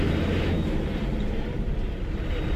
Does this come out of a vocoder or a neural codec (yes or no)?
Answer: yes